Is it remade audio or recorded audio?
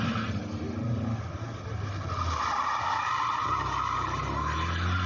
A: recorded